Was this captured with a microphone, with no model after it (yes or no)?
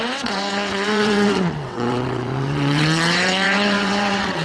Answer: no